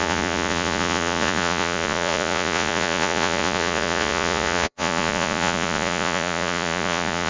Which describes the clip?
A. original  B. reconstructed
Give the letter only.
B